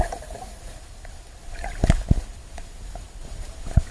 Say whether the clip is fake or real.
real